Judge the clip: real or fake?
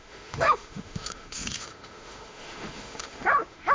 fake